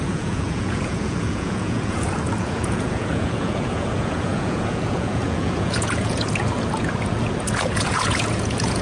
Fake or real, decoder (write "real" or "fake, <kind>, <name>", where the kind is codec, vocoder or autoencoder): fake, vocoder, Vocos